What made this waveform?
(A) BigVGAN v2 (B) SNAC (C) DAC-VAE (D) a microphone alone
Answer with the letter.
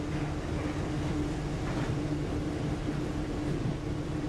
D